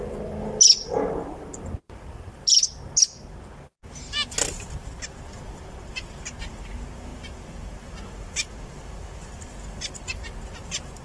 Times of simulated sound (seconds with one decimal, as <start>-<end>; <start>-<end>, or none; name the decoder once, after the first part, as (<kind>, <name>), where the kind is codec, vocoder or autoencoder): none

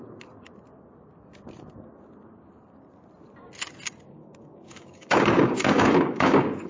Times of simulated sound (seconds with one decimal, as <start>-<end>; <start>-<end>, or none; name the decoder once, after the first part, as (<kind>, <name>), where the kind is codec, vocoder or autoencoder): 4.2-6.7 (codec, DAC)

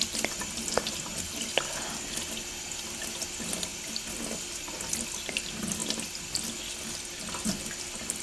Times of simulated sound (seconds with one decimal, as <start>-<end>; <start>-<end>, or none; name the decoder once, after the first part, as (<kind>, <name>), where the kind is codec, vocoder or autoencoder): none

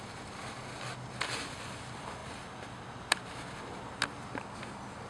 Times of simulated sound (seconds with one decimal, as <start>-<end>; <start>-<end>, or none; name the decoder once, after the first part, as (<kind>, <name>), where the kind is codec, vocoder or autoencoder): none

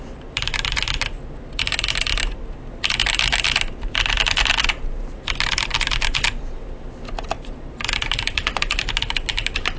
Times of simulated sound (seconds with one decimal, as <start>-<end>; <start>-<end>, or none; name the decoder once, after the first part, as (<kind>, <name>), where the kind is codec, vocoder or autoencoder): none

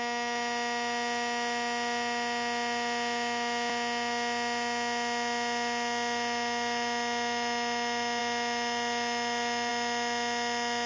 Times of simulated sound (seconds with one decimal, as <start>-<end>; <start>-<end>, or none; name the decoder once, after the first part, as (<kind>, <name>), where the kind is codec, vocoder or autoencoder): none

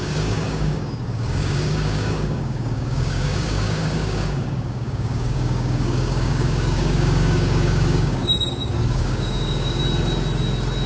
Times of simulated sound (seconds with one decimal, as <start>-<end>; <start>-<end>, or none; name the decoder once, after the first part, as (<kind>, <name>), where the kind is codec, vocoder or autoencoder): 0.0-9.8 (codec, DAC)